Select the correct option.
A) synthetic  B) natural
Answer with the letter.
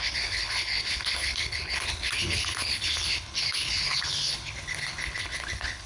A